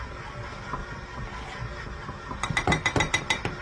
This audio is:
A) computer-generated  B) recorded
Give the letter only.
B